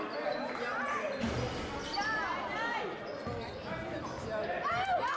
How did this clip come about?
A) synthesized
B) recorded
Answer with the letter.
B